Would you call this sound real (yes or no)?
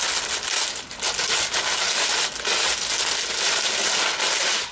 yes